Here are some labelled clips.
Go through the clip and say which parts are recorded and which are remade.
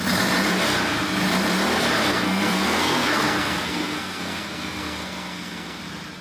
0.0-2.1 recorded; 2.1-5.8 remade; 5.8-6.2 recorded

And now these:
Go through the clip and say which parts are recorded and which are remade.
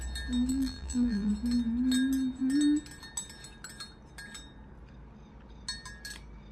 0.0-0.5 recorded; 0.5-1.3 remade; 1.3-6.5 recorded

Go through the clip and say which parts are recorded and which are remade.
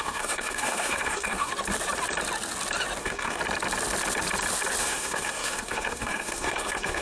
0.0-1.5 remade; 1.5-3.0 recorded; 3.0-3.4 remade; 3.4-4.8 recorded; 4.8-7.0 remade